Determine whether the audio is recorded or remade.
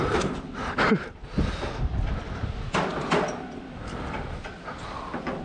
recorded